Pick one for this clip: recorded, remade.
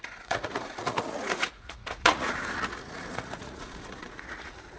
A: remade